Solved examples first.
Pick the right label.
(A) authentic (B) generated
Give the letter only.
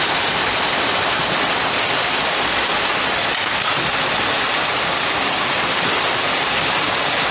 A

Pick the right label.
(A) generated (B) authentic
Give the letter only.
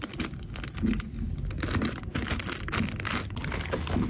B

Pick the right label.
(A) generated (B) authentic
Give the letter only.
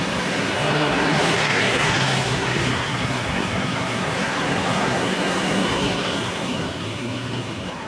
A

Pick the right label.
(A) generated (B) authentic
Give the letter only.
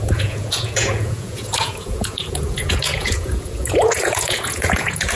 A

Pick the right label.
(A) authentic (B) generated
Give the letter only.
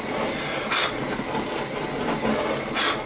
A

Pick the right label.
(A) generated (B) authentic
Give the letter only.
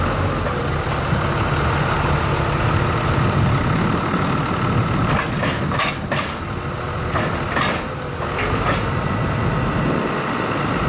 B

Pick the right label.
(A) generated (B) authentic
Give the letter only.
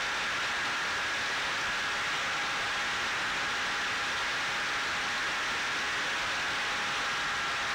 B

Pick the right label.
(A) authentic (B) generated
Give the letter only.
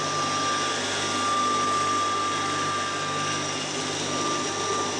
A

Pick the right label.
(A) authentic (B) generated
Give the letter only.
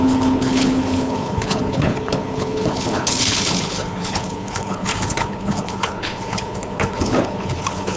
B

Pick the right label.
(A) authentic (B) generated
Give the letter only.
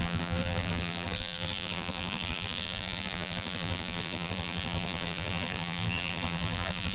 B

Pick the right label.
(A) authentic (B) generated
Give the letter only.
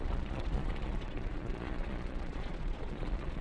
B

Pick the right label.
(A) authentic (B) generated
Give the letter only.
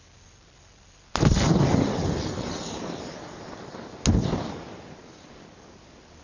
A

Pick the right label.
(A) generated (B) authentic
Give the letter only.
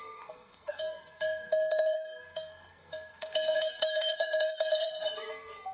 A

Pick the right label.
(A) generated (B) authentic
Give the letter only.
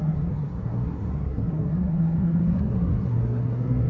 A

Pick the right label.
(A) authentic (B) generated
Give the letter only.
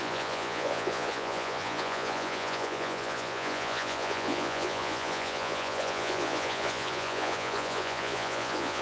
B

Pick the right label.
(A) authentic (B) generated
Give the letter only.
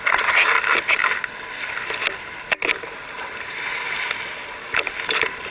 A